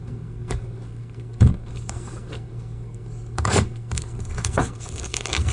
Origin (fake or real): fake